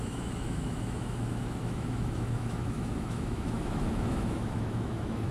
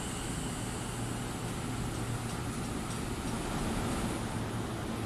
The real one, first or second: second